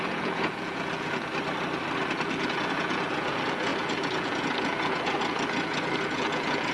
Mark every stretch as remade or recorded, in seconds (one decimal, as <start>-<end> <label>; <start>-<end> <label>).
0.0-1.3 remade; 1.3-2.1 recorded; 2.1-6.7 remade